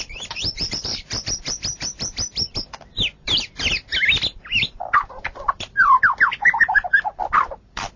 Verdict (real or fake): fake